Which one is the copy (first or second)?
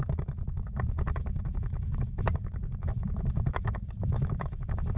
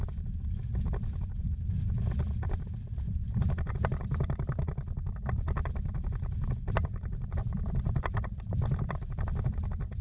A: first